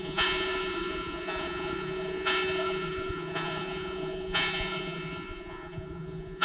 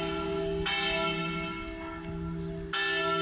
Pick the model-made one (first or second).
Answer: first